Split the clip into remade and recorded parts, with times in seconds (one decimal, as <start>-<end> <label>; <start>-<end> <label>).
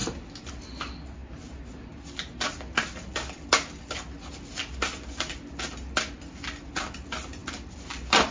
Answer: 0.0-0.5 remade; 0.5-7.4 recorded; 7.4-8.3 remade